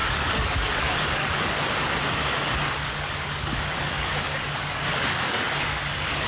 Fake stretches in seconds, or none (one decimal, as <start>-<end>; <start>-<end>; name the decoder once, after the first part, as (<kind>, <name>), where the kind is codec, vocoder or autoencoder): 0.0-1.3 (codec, DAC); 2.2-6.3